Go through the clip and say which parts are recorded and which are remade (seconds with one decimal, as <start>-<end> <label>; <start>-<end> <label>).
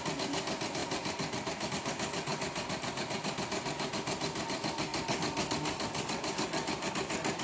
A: 0.0-7.4 recorded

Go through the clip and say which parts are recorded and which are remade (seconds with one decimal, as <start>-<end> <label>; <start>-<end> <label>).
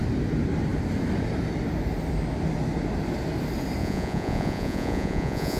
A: 0.0-3.8 recorded; 3.8-5.6 remade